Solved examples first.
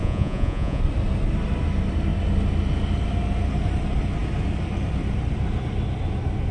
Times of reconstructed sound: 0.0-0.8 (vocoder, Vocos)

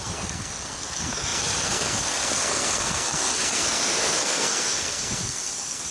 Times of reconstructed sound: 0.0-5.9 (codec, SNAC)

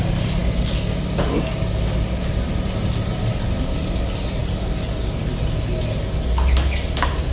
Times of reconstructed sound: none